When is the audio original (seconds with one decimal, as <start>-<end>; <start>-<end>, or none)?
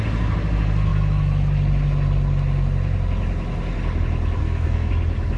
0.0-4.4; 4.9-5.4